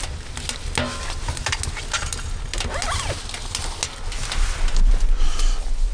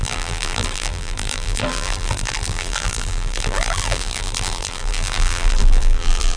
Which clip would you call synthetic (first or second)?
second